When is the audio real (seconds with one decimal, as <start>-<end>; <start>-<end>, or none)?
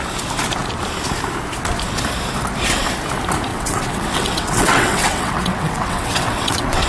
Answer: 0.0-3.5